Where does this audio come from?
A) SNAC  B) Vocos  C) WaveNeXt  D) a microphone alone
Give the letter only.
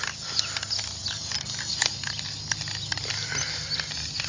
D